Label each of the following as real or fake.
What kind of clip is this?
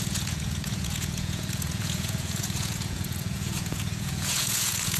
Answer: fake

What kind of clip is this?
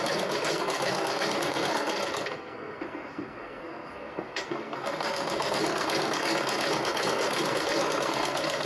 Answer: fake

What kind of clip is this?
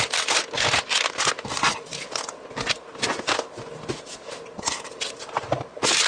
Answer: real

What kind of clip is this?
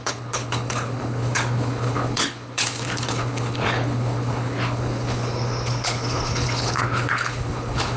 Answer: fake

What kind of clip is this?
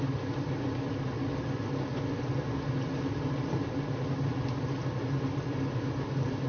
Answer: real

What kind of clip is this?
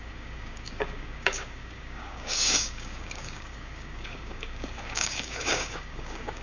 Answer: fake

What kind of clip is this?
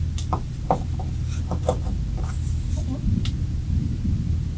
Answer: real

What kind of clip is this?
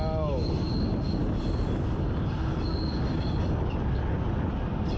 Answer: real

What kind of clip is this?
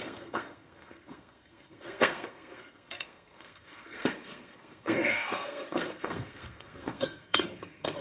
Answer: fake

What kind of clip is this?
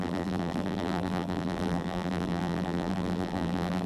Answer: fake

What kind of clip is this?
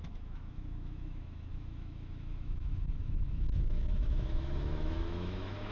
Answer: fake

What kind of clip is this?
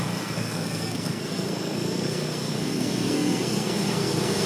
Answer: fake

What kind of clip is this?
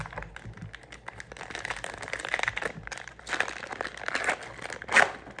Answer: real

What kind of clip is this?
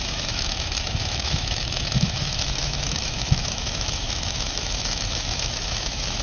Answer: fake